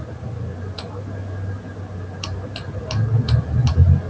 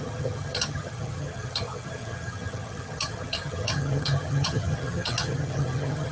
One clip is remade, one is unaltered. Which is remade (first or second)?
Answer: second